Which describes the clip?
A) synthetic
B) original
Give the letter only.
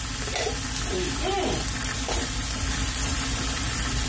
B